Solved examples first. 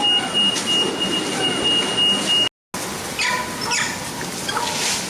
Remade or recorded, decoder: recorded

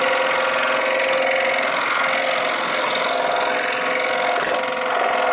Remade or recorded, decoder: recorded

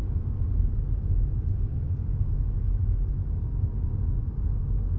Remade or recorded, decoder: recorded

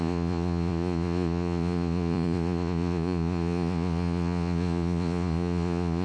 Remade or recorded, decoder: remade, vocoder, Vocos